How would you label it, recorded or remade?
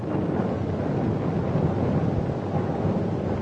recorded